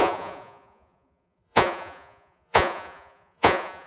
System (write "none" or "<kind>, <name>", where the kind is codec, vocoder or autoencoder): vocoder, Vocos